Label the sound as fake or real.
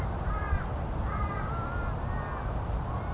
real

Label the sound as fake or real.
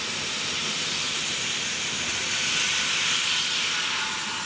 real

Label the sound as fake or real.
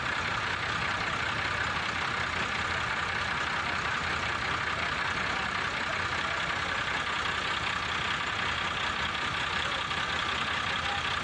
real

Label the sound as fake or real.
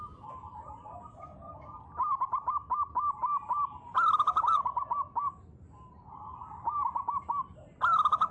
real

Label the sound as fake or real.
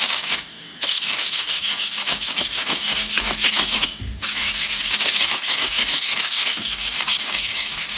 fake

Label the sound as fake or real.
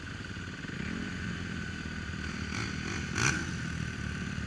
real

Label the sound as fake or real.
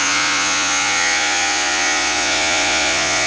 fake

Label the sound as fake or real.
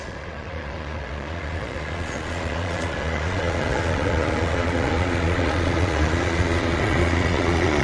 fake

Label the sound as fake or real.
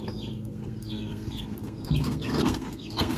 fake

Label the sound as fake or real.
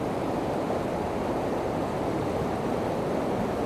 real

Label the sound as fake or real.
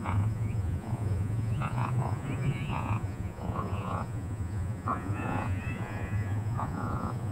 fake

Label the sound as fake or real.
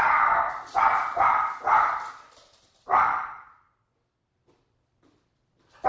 real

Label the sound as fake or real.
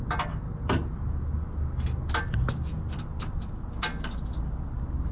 real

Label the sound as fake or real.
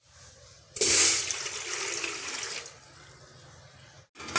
real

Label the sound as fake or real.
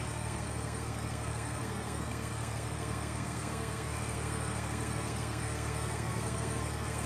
fake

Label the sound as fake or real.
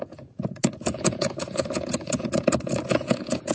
fake